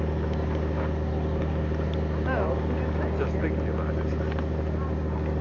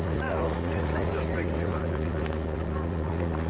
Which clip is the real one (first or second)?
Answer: first